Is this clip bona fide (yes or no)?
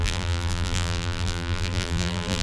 no